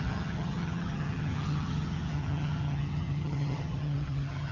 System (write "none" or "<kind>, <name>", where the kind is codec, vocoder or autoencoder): vocoder, HiFi-GAN